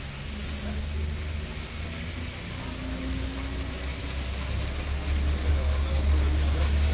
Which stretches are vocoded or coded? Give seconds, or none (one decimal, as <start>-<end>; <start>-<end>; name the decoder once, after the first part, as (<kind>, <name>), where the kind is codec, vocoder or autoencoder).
none